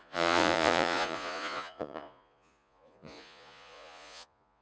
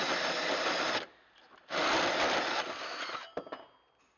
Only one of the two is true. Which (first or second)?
second